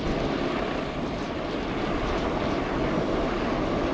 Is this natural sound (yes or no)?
yes